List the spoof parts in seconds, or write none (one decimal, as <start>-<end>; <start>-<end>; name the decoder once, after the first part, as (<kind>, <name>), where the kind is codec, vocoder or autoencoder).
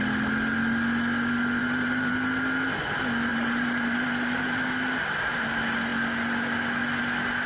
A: 1.6-2.1 (vocoder, BigVGAN v2); 3.3-4.6